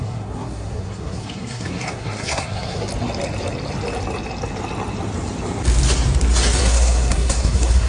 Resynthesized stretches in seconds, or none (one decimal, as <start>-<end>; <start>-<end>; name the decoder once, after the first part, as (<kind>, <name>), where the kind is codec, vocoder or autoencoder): 0.0-2.9 (codec, SNAC); 6.6-7.9